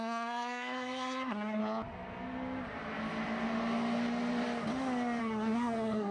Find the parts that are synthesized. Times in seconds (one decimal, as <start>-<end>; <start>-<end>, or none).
0.0-1.6; 5.2-6.1